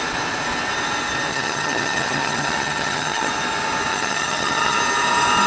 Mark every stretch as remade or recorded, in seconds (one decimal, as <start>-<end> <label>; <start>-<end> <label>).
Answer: 0.0-1.3 recorded; 1.3-3.3 remade; 3.3-3.9 recorded; 3.9-4.8 remade; 4.8-5.5 recorded